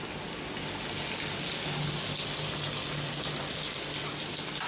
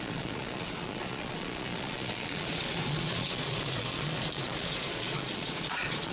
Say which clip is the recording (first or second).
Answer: first